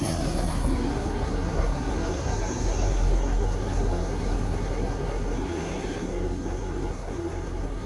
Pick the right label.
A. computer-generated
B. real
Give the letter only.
A